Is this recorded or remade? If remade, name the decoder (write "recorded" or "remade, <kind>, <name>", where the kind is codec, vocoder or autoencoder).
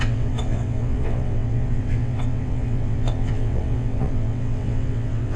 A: remade, vocoder, WaveNeXt